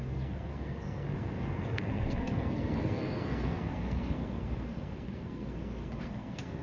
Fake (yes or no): yes